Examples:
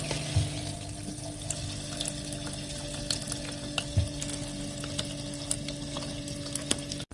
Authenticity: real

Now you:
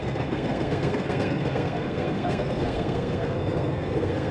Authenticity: fake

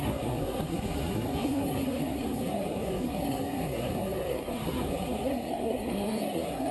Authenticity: fake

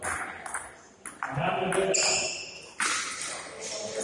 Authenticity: real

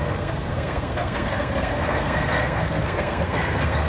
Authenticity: fake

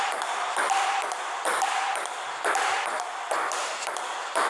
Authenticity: real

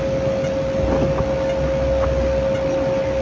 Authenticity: real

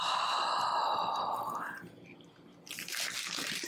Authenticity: real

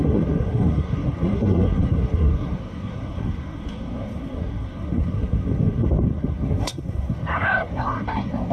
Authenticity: fake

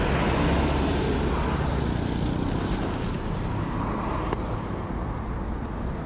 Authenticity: real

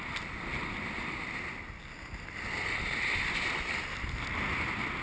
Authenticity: real